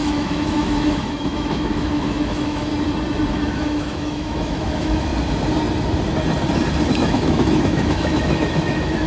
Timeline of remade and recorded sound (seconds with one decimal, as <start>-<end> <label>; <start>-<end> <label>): 0.0-2.7 remade; 2.7-3.3 recorded; 3.3-5.1 remade; 5.1-6.9 recorded; 6.9-9.1 remade